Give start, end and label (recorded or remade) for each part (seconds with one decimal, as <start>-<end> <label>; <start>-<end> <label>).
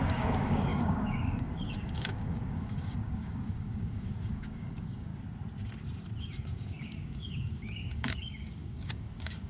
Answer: 0.0-5.1 remade; 5.1-6.2 recorded; 6.2-9.5 remade